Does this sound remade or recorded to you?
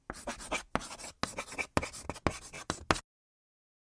recorded